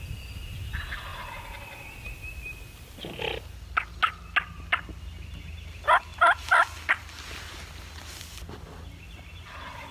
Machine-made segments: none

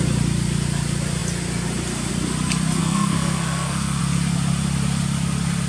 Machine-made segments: 2.8-4.0

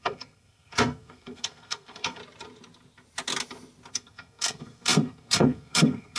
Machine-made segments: 0.0-2.2; 3.9-6.2

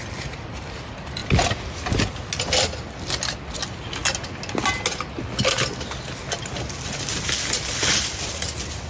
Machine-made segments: none

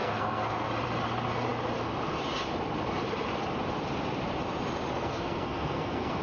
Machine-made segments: 0.0-0.7; 5.0-6.2

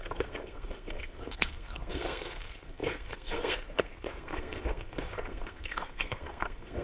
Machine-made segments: 0.0-6.8

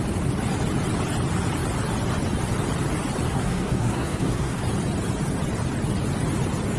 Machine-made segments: 3.3-4.6